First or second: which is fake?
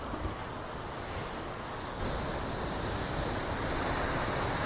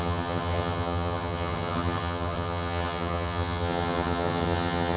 second